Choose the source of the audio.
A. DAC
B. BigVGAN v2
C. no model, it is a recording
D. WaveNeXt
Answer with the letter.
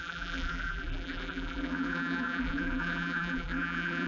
B